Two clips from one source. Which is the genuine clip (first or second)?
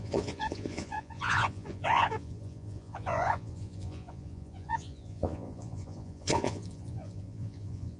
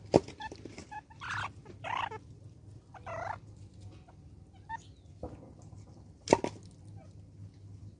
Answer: second